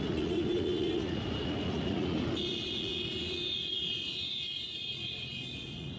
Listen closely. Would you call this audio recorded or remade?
remade